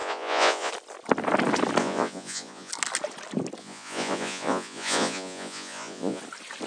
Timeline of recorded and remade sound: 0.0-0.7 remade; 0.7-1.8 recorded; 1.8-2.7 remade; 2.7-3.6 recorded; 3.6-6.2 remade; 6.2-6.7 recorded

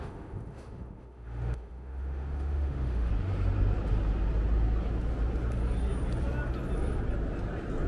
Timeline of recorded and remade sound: 0.0-3.1 remade; 3.1-7.9 recorded

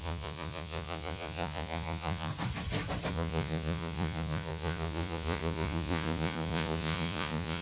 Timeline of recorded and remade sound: 0.0-2.3 remade; 2.3-3.1 recorded; 3.1-7.6 remade

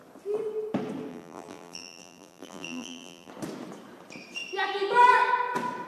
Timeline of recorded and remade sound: 0.0-1.1 recorded; 1.1-3.3 remade; 3.3-5.9 recorded